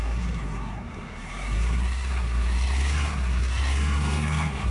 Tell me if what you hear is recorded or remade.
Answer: remade